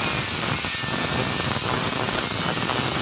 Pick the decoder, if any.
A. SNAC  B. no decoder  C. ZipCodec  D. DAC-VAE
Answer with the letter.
B